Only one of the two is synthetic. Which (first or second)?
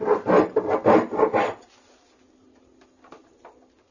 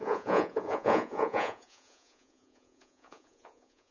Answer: second